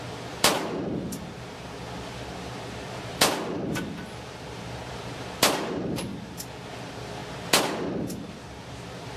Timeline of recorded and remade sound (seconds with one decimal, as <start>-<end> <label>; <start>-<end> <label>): 0.0-0.5 remade; 0.5-2.4 recorded; 2.4-6.1 remade; 6.1-6.7 recorded; 6.7-7.2 remade; 7.2-8.0 recorded; 8.0-9.2 remade